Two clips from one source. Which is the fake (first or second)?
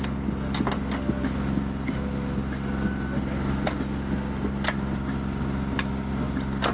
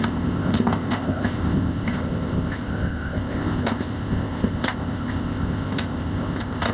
second